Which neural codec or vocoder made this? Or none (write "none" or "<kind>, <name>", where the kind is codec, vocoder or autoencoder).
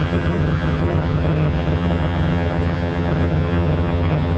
vocoder, HiFi-GAN